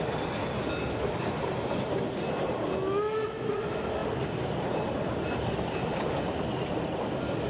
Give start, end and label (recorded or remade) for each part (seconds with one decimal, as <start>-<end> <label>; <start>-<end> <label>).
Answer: 0.0-7.5 recorded